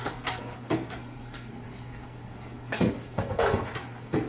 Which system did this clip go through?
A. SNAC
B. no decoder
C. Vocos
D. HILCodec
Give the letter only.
A